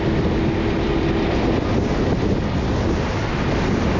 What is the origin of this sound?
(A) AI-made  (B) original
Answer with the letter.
B